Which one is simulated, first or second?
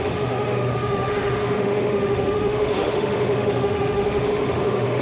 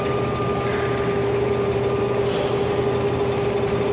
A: first